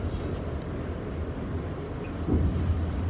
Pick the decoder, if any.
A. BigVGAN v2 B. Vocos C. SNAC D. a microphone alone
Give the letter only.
D